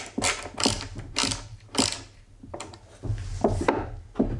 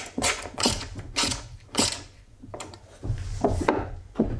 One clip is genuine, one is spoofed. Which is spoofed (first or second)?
second